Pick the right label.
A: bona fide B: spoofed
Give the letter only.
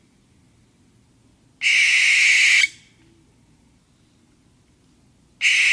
A